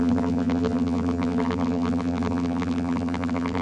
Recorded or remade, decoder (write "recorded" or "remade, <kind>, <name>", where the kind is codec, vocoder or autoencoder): remade, vocoder, BigVGAN v2